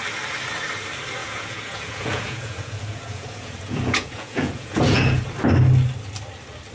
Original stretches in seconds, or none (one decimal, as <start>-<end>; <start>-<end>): 0.0-1.2; 5.2-6.7